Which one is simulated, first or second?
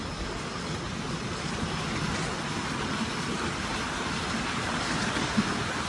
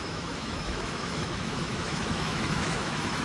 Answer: second